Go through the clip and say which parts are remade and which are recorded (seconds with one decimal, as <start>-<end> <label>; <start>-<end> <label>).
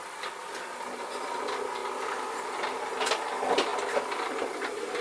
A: 0.0-5.0 recorded